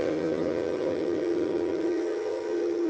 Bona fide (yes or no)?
no